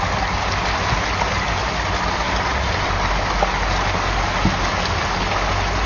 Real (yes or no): yes